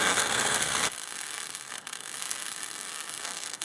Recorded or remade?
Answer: remade